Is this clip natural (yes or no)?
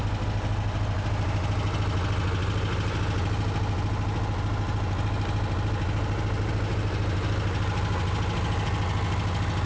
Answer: yes